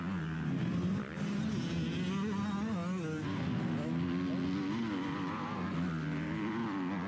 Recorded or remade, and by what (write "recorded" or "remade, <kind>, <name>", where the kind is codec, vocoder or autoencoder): recorded